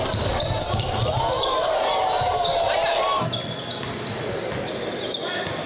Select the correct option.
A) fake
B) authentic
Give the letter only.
B